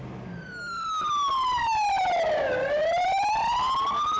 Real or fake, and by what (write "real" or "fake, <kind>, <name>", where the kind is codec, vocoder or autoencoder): real